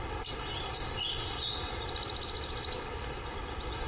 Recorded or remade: recorded